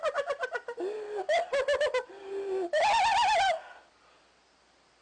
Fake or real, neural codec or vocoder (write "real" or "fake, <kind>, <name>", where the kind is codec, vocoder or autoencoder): real